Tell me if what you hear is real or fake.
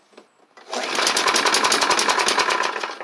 real